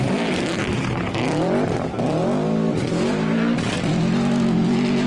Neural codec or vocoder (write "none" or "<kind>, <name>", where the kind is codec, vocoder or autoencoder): none